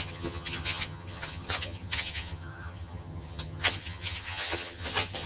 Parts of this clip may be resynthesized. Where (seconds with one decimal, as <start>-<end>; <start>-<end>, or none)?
0.0-5.3